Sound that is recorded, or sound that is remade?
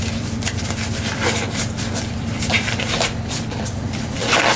remade